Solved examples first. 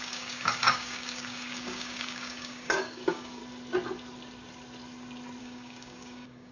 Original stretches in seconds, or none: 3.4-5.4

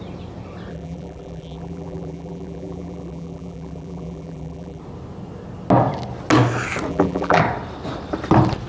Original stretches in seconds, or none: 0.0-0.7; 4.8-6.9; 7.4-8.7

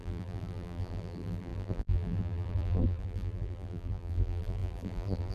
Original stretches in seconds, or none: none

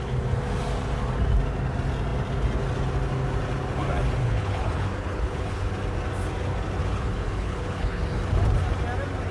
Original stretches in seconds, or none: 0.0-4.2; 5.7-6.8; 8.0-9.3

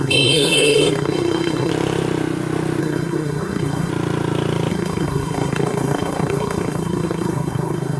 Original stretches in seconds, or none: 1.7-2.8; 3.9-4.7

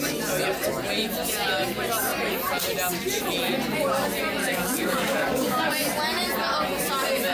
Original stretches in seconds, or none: 0.0-4.4; 5.6-7.3

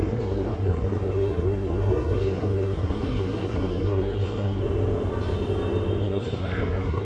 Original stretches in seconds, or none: 4.6-6.0

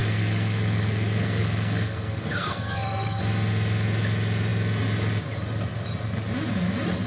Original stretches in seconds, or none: 3.2-7.1